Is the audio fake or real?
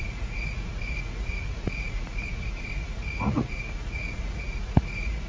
fake